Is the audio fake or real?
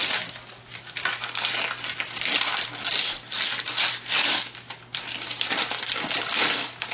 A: real